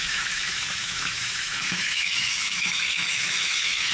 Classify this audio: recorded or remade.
remade